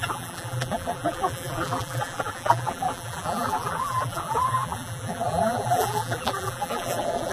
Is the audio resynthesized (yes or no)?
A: yes